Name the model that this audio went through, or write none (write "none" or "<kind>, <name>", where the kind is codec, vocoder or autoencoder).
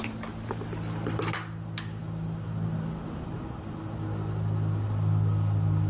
none